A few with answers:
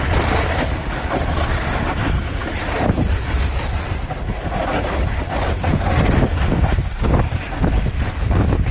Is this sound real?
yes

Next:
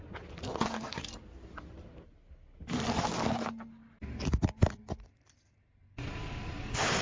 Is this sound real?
yes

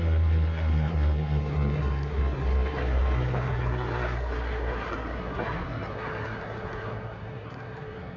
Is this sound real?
no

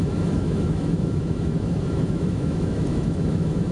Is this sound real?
no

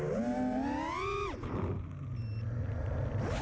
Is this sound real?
yes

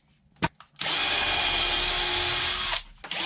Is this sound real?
yes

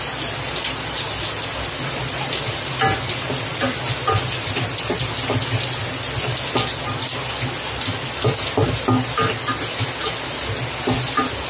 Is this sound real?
yes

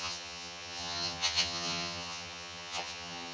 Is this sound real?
no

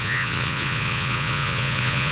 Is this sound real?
no